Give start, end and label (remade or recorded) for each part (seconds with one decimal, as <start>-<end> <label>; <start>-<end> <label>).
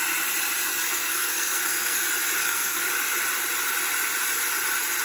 0.0-0.7 recorded; 0.7-2.0 remade; 2.0-2.4 recorded; 2.4-2.9 remade; 2.9-5.0 recorded